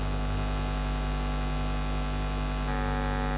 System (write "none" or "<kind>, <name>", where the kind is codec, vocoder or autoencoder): none